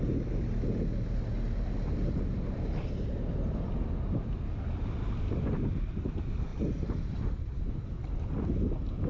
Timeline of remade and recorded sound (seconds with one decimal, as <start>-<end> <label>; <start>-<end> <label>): 0.0-9.1 recorded